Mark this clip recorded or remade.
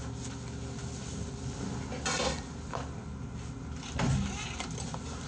recorded